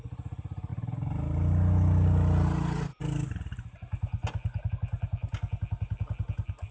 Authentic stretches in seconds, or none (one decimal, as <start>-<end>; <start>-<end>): 0.0-6.7